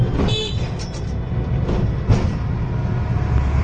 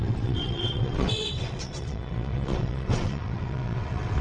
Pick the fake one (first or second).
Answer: second